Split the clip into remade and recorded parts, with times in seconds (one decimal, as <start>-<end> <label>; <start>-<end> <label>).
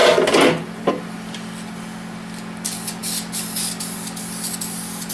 0.0-5.1 recorded